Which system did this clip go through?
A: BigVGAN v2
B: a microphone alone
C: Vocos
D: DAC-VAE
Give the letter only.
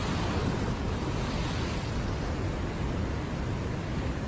B